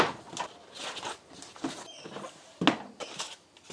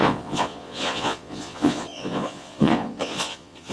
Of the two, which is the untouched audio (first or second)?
first